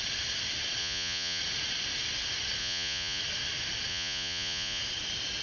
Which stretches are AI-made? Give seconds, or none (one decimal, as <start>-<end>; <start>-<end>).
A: 0.8-1.4; 2.6-3.2; 3.9-4.8